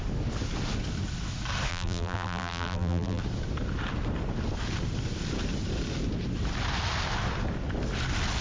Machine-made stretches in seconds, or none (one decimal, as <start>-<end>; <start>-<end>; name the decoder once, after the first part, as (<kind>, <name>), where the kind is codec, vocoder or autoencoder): 1.7-3.2 (vocoder, BigVGAN v2)